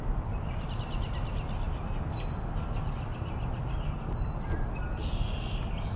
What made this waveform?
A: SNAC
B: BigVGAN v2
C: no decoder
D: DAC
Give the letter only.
C